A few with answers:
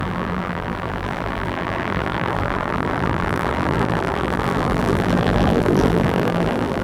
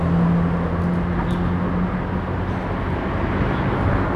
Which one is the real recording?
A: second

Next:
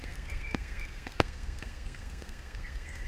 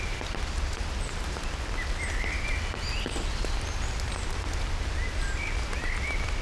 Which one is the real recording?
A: second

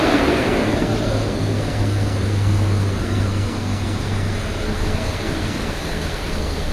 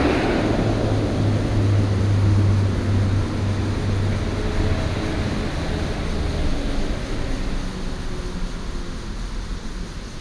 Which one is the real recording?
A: second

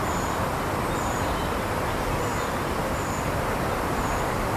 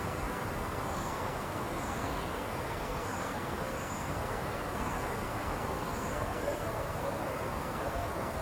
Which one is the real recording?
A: first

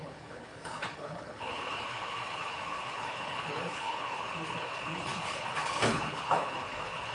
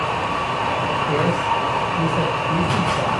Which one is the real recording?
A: second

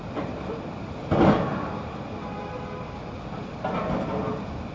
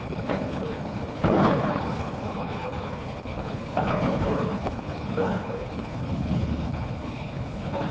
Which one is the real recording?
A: first